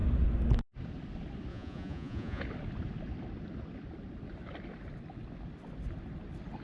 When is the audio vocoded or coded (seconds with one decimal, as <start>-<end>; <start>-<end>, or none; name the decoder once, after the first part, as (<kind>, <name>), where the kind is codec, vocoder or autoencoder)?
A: 1.5-2.4 (vocoder, Vocos)